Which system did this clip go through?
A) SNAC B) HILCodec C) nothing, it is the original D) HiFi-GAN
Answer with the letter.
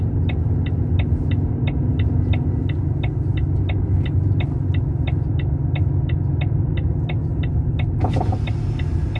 C